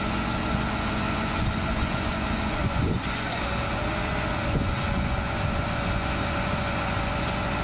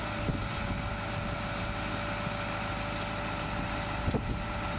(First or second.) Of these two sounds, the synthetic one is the first